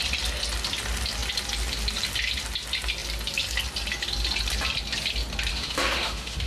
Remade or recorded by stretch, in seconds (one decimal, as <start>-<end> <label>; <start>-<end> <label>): 0.0-5.5 recorded; 5.5-6.5 remade